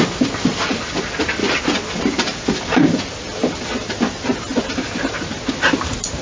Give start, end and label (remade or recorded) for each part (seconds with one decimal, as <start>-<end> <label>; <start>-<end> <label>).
0.0-1.4 recorded; 1.4-4.6 remade; 4.6-6.2 recorded